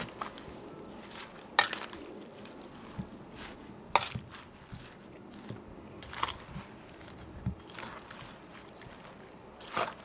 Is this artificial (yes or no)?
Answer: no